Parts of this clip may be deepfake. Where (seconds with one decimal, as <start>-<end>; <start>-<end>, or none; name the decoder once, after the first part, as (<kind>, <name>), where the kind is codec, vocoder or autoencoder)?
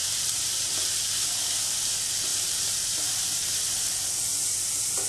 0.0-0.7 (vocoder, BigVGAN v2); 2.3-3.4